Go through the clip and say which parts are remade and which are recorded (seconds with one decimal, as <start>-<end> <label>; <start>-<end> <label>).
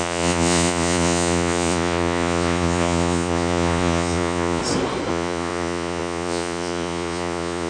0.0-4.6 remade; 4.6-5.1 recorded; 5.1-7.7 remade